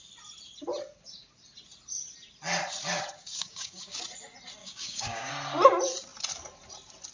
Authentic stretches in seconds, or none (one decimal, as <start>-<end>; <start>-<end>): 0.0-3.2; 4.0-4.6; 5.3-7.1